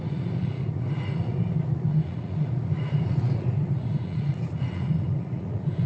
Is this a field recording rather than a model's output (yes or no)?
no